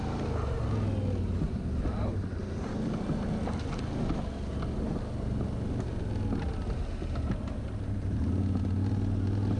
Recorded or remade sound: recorded